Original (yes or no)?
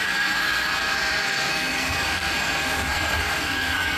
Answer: no